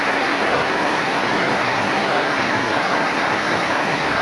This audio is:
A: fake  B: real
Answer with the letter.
A